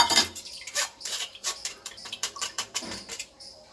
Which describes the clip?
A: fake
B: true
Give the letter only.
A